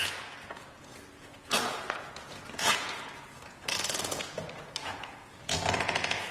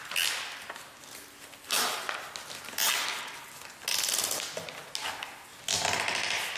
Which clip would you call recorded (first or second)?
second